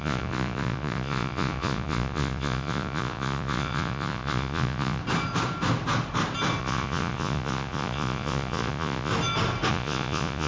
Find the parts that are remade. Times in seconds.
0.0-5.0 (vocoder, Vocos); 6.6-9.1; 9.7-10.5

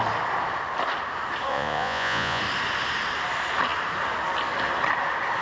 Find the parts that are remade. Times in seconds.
1.5-2.4 (vocoder, Vocos)